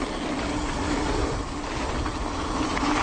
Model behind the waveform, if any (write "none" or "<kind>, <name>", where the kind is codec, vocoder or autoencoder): none